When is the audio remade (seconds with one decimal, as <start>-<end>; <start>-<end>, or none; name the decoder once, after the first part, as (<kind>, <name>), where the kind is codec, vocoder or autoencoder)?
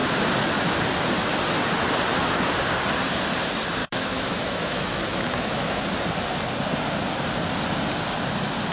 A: 3.8-5.8 (autoencoder, DAC-VAE)